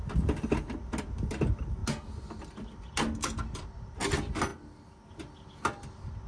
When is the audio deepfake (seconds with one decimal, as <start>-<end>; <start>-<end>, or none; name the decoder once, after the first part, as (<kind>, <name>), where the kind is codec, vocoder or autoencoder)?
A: none